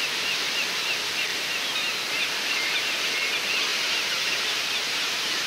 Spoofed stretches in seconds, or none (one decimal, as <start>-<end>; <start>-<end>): 1.3-2.4; 3.7-5.1

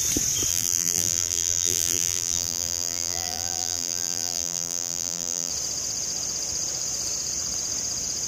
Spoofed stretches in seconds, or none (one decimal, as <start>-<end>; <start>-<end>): 0.5-5.5

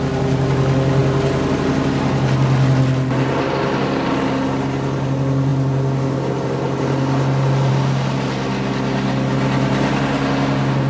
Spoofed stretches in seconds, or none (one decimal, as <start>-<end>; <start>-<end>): none

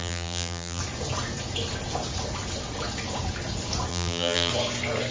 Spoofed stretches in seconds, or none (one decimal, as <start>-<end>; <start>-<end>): 0.0-0.8; 3.9-4.5